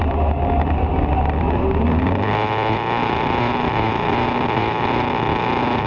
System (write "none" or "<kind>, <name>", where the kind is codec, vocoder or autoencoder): none